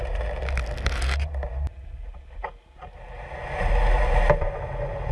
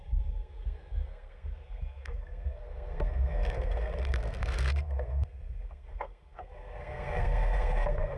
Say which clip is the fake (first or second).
second